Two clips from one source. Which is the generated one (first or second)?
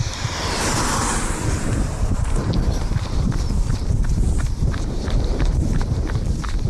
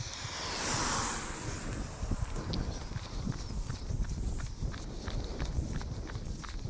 first